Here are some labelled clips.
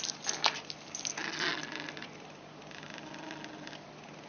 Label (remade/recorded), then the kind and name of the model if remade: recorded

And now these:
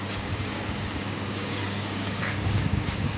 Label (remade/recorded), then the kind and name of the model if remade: remade, codec, DAC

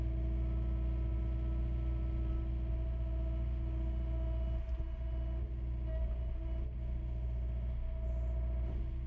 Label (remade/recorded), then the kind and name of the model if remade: recorded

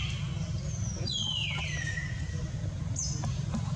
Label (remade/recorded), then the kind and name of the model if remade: recorded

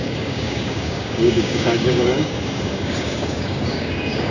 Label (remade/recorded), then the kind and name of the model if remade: remade, codec, DAC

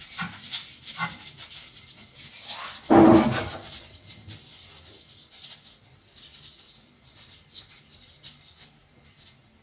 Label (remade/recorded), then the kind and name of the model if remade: recorded